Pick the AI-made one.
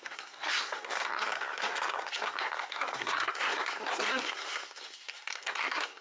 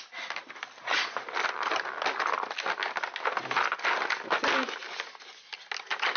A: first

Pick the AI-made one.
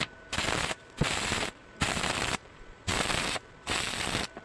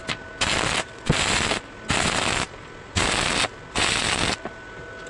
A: first